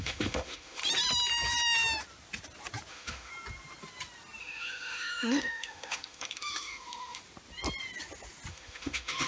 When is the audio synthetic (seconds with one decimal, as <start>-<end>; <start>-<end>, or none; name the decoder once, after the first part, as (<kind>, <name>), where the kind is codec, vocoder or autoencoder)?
0.0-0.8 (autoencoder, DAC-VAE); 2.9-3.3; 4.4-7.2; 8.5-9.3